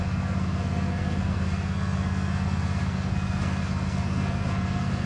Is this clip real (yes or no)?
no